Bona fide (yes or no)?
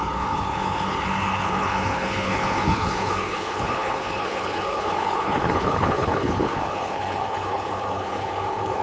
no